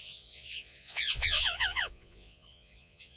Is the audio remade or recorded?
remade